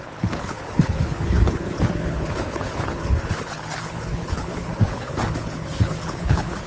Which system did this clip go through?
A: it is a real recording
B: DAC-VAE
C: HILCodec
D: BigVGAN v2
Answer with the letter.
C